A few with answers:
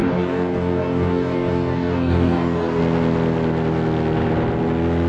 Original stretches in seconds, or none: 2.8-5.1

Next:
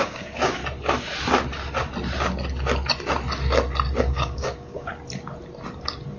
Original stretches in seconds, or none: 0.6-4.0; 4.9-6.2

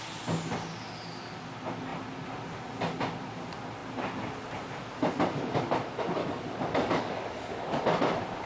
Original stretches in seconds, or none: 0.0-6.2; 7.8-8.5